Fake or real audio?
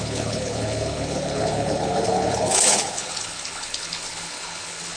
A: fake